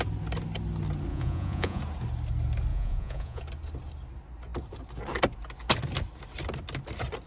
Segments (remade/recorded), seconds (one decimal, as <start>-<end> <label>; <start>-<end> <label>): 0.0-1.1 recorded; 1.1-1.8 remade; 1.8-2.7 recorded; 2.7-3.4 remade; 3.4-7.3 recorded